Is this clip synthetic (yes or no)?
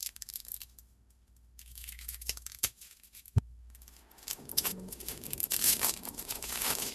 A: yes